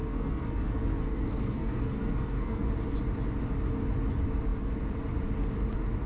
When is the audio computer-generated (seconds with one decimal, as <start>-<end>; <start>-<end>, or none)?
0.0-2.7